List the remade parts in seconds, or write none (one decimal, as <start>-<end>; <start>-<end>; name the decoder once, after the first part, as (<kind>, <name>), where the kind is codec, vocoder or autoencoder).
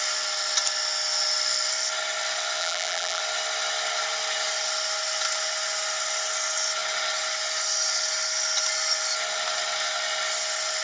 2.6-3.2 (vocoder, BigVGAN v2)